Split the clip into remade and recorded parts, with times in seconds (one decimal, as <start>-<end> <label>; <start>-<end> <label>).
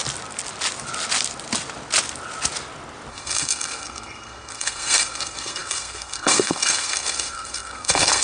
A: 0.0-3.1 recorded; 3.1-8.2 remade